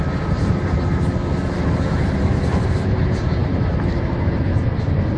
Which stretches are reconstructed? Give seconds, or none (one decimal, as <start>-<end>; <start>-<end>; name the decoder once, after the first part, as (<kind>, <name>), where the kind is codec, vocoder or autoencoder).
none